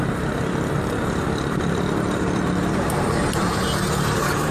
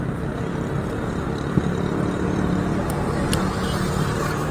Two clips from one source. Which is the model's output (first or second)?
first